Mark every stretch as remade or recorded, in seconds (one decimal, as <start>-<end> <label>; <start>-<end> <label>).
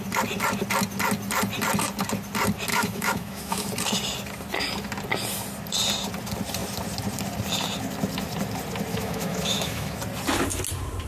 0.0-2.7 recorded; 2.7-3.7 remade; 3.7-8.9 recorded; 8.9-10.0 remade; 10.0-11.1 recorded